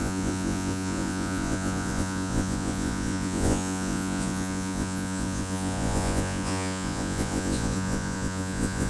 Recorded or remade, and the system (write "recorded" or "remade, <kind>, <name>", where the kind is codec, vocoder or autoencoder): remade, vocoder, Vocos